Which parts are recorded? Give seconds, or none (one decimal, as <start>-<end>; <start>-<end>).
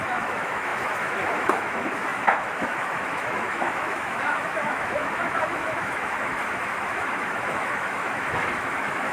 none